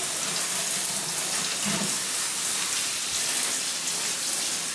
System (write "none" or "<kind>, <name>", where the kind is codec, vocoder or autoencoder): none